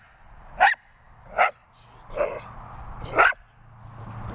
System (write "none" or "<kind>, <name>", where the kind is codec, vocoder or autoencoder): none